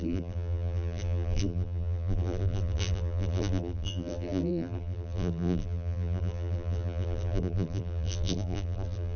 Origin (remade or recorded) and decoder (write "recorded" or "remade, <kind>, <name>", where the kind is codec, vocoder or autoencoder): remade, vocoder, BigVGAN v2